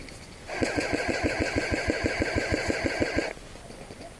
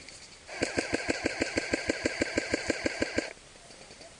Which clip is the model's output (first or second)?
first